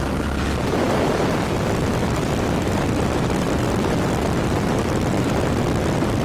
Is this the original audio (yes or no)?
yes